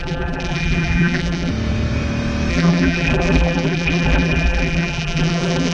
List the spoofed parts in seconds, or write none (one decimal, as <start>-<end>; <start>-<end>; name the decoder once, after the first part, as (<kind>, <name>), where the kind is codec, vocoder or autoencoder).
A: 0.0-1.5 (vocoder, BigVGAN v2); 2.5-5.7